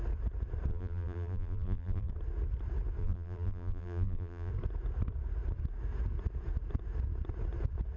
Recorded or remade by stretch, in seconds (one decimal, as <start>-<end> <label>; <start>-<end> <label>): 0.0-0.7 recorded; 0.7-2.1 remade; 2.1-3.0 recorded; 3.0-4.5 remade; 4.5-8.0 recorded